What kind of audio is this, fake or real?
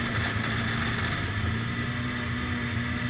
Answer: real